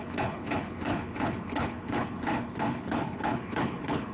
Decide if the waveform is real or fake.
fake